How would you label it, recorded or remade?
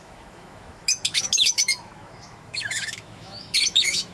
remade